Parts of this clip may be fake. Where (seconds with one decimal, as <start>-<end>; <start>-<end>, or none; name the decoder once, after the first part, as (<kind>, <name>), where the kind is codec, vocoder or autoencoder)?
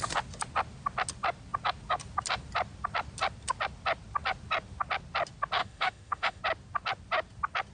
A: 5.6-6.4 (autoencoder, DAC-VAE)